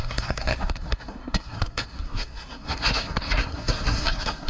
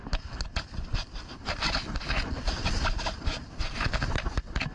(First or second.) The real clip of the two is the second